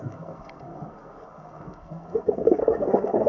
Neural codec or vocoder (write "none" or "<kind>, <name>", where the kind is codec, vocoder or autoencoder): codec, SNAC